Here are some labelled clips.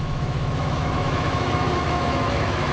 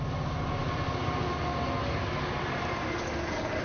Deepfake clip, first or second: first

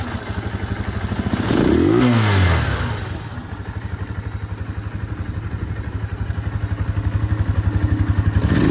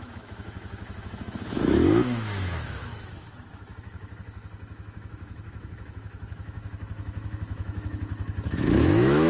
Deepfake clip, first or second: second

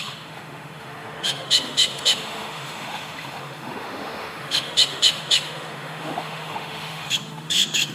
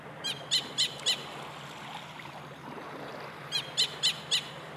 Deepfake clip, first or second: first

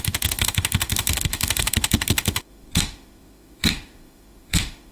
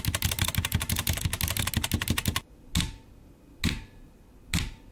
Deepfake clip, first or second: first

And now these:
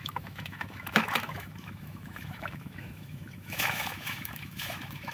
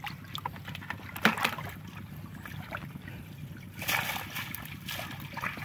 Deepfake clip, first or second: first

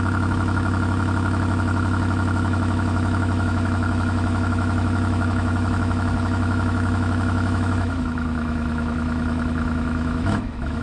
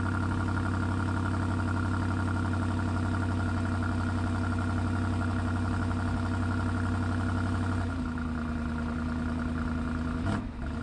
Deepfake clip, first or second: first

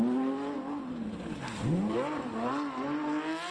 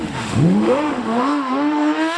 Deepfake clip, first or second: second